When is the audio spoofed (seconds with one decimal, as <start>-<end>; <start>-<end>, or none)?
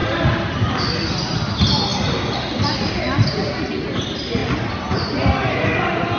none